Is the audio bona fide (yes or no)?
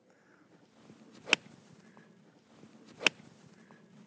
yes